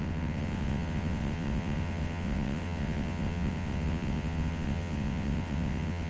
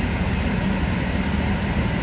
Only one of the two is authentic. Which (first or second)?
second